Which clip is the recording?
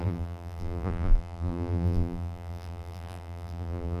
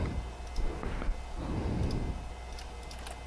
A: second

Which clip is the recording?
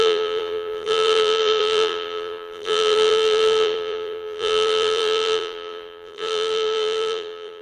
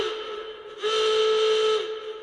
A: second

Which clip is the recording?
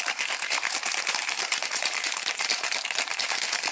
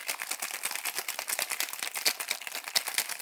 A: second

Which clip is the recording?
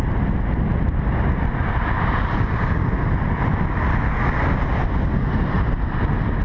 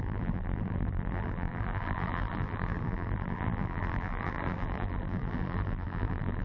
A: first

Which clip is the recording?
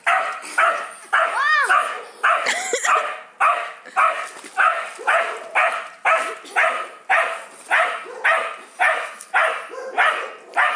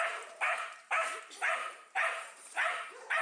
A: first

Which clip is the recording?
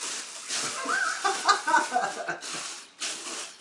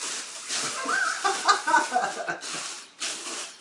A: first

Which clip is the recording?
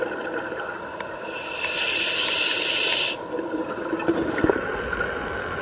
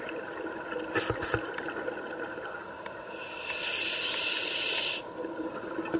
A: second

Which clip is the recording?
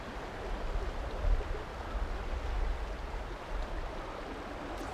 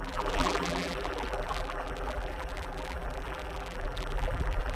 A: first